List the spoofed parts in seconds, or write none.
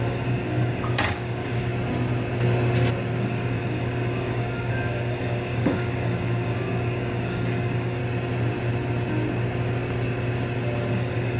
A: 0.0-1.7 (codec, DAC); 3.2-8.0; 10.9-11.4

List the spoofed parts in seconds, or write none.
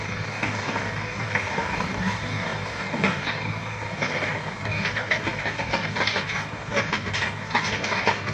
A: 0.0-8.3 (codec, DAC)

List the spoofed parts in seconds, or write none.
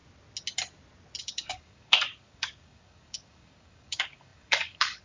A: 1.2-5.0 (codec, DAC)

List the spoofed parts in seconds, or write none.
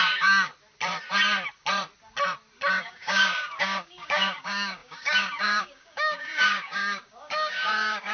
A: 0.0-0.5 (codec, DAC); 2.8-8.1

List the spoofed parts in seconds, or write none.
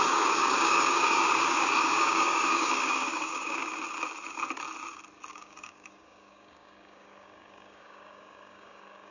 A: 0.0-3.6 (codec, DAC); 5.3-9.1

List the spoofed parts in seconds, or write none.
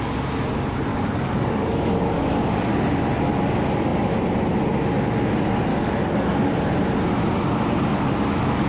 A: 0.9-2.7 (codec, DAC); 5.7-6.5; 7.9-8.7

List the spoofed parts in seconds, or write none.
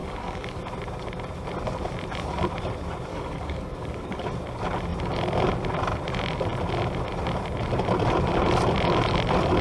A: 0.0-0.6 (codec, DAC); 3.1-4.2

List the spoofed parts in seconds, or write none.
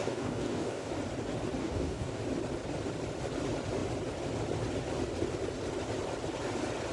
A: 0.0-0.9 (codec, DAC); 1.6-2.2